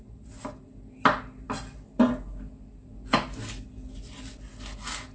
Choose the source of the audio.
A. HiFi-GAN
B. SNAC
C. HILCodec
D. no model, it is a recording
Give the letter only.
D